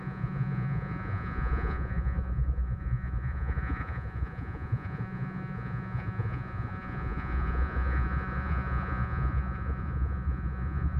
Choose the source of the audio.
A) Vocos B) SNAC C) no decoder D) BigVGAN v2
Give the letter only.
A